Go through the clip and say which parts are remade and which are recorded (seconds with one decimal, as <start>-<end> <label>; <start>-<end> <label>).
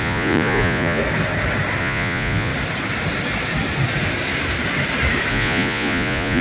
0.0-1.0 remade; 1.0-1.8 recorded; 1.8-2.5 remade; 2.5-5.3 recorded; 5.3-6.4 remade